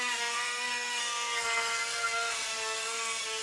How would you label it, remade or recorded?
remade